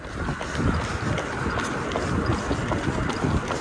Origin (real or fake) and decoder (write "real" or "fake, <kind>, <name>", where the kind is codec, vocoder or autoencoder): real